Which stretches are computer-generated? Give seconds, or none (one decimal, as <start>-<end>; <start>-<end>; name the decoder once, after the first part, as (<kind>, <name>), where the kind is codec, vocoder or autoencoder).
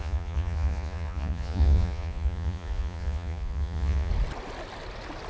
0.0-4.1 (vocoder, Vocos)